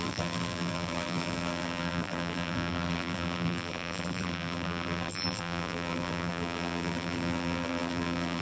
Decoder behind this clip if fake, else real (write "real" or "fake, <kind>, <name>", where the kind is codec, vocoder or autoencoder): fake, vocoder, BigVGAN v2